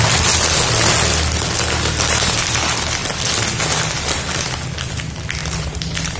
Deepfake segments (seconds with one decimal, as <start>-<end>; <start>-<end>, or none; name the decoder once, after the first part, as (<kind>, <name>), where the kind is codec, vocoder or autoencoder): 5.4-6.2 (vocoder, BigVGAN v2)